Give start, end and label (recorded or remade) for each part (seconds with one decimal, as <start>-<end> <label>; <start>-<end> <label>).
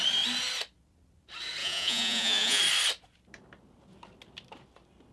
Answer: 0.0-1.6 recorded; 1.6-2.6 remade; 2.6-5.1 recorded